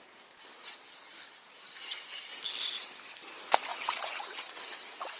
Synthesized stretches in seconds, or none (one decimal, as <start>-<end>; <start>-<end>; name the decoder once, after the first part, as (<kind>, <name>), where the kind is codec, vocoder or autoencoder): 3.7-5.2 (vocoder, WaveNeXt)